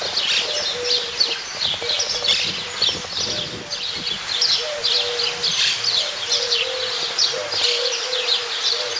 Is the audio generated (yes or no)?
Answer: no